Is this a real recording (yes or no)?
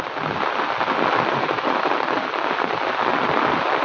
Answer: yes